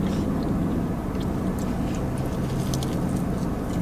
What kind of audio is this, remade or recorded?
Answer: recorded